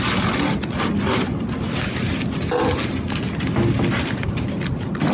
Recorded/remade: recorded